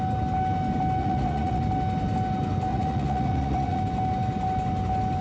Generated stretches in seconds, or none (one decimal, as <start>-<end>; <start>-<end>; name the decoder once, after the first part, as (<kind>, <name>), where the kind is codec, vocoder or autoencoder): 1.0-1.6 (vocoder, Vocos); 2.7-3.8